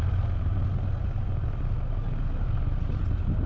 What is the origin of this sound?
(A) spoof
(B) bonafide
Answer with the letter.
B